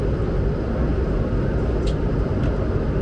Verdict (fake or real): real